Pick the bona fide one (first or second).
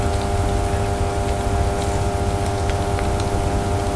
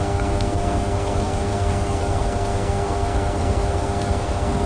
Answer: first